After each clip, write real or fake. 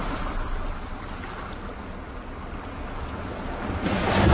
real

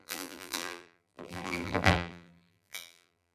fake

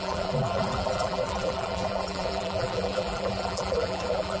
fake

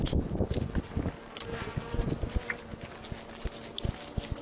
real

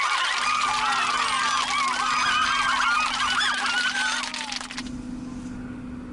real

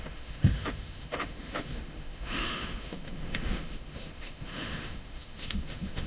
fake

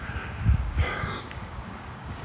fake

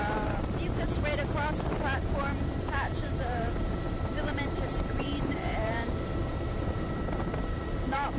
fake